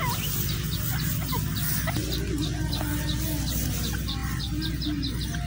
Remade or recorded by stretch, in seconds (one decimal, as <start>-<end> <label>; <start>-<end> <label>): 0.0-5.5 recorded